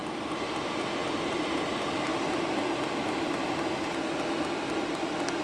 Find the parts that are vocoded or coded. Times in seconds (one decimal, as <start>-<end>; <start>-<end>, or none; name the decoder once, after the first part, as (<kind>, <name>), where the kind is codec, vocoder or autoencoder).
none